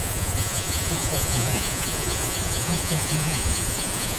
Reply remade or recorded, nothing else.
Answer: remade